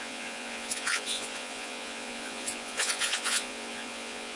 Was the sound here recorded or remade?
remade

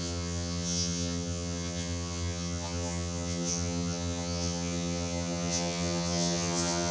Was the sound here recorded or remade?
remade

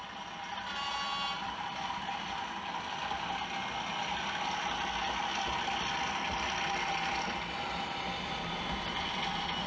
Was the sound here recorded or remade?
recorded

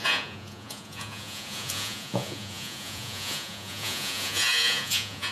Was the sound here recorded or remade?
remade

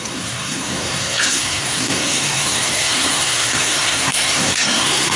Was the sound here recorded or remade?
remade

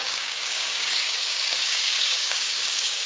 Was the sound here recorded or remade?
remade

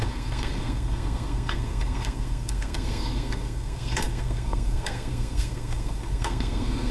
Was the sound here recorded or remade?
remade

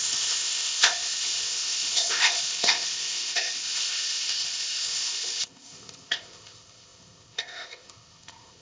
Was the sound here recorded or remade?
remade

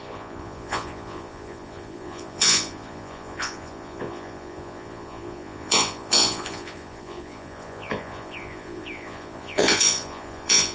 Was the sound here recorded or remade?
remade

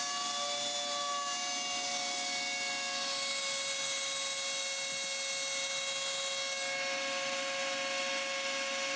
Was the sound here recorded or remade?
recorded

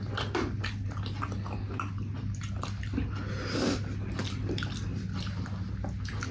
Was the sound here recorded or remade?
recorded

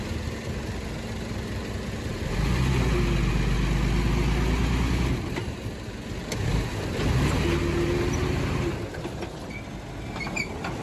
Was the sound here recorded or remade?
recorded